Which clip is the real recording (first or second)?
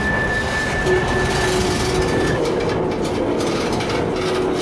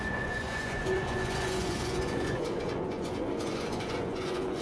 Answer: first